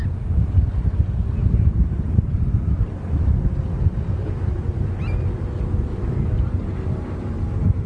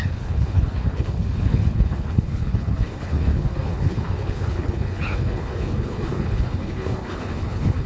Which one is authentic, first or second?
first